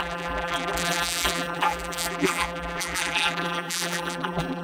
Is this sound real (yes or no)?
no